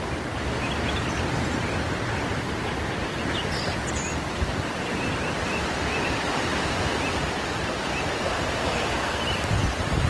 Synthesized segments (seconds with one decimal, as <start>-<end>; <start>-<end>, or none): 8.6-9.2